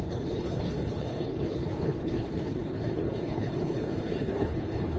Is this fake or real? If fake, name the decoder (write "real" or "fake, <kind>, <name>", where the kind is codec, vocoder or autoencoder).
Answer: fake, codec, HILCodec